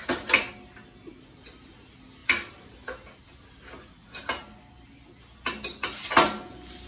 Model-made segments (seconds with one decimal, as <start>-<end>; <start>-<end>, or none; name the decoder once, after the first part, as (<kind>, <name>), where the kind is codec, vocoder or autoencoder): 2.2-4.7 (vocoder, BigVGAN v2)